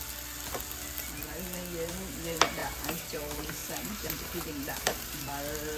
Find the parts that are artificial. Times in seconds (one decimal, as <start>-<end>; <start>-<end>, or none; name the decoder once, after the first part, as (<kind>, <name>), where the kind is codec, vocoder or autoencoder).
2.6-3.2 (vocoder, BigVGAN v2); 3.6-5.2